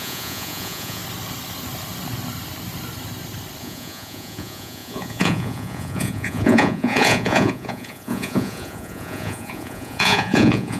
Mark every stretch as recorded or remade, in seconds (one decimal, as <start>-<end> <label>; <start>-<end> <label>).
0.0-1.0 remade; 1.0-3.6 recorded; 3.6-10.8 remade